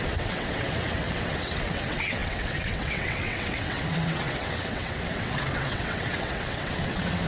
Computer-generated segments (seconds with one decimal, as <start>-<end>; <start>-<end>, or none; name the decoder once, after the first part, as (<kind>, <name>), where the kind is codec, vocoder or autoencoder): 0.0-7.3 (vocoder, WaveNeXt)